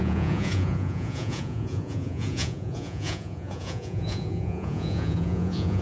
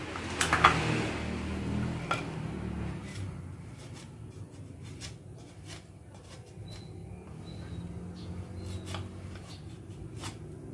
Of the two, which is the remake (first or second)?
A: first